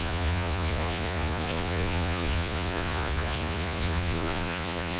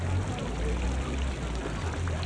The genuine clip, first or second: second